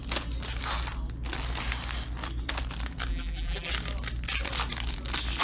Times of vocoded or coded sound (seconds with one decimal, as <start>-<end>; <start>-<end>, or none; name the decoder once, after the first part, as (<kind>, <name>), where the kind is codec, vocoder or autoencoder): 3.1-3.7 (vocoder, BigVGAN v2)